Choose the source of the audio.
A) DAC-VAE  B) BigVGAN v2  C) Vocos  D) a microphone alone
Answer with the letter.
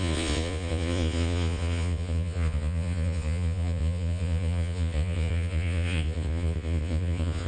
C